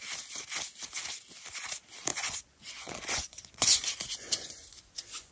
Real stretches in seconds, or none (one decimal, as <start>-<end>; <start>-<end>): 0.0-2.1